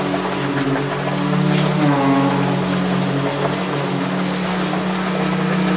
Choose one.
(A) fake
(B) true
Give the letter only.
B